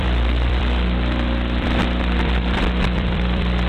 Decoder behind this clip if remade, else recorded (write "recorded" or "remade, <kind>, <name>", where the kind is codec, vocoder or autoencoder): remade, vocoder, BigVGAN v2